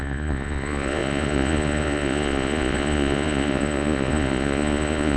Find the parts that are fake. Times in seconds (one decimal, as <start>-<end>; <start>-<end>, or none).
0.0-5.2